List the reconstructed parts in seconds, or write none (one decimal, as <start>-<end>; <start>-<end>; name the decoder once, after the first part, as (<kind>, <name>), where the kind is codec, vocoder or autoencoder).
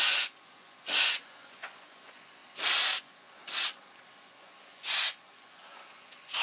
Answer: 0.0-2.4 (vocoder, Vocos); 3.0-3.4; 4.2-6.4